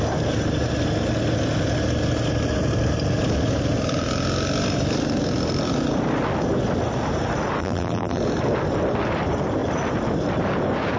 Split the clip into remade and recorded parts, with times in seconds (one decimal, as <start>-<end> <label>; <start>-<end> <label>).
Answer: 0.0-7.6 recorded; 7.6-8.2 remade; 8.2-11.0 recorded